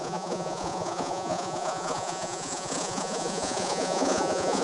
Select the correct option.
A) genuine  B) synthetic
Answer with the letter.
B